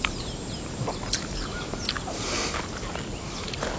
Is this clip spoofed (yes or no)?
no